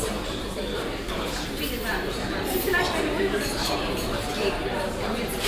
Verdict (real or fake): fake